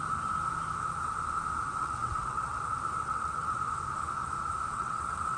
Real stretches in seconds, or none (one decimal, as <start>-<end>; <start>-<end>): 0.0-1.8; 2.6-3.0; 3.6-4.7